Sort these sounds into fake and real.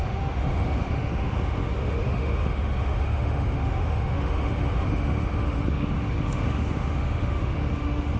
fake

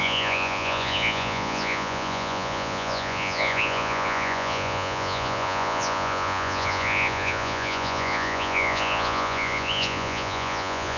fake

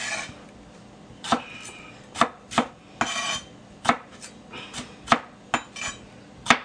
real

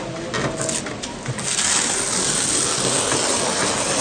real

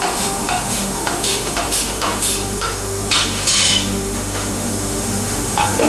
fake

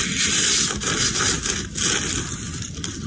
real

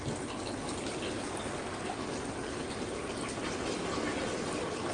real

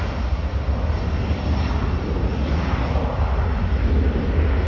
real